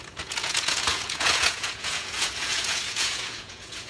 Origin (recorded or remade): remade